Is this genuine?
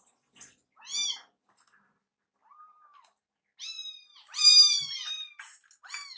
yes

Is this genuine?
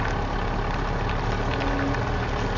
yes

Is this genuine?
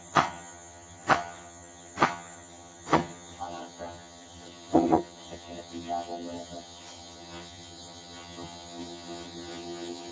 no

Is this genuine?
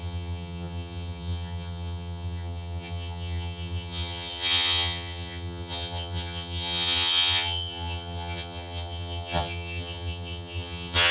no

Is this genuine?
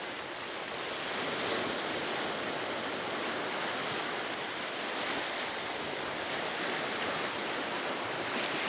yes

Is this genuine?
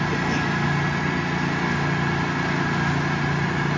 yes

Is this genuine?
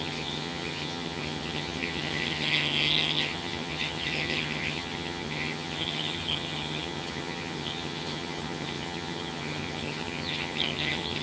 no